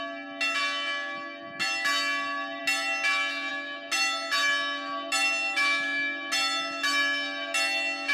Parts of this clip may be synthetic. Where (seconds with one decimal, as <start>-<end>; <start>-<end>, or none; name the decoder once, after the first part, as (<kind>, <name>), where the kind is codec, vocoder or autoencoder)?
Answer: none